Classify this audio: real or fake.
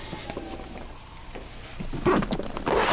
real